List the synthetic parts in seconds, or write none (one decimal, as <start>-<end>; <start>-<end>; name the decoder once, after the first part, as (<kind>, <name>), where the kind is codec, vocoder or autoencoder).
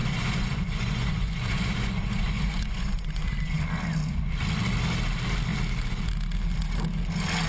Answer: 0.0-3.6 (vocoder, Vocos)